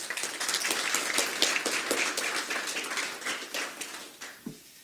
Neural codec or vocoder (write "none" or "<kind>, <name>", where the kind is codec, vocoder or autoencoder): none